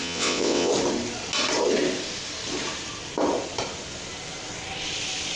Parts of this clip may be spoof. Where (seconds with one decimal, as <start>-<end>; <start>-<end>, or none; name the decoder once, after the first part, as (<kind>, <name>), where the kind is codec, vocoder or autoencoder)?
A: 0.0-0.7 (vocoder, WaveNeXt)